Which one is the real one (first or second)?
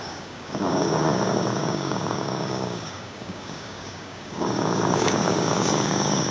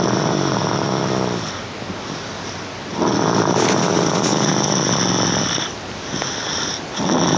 second